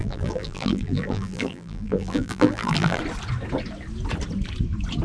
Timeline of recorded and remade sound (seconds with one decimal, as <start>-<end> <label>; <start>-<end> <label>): 0.0-3.0 remade; 3.0-5.0 recorded